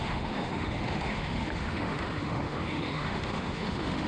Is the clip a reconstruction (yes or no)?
yes